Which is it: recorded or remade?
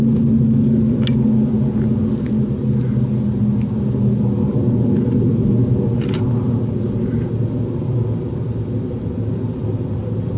recorded